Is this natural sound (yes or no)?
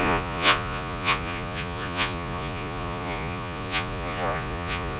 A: no